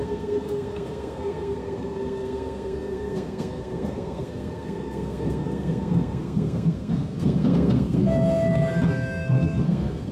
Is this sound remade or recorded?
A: remade